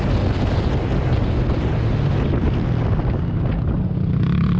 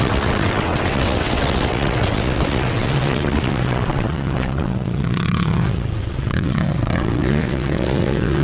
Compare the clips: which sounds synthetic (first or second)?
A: second